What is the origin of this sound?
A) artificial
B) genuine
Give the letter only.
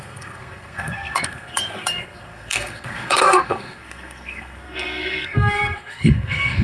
A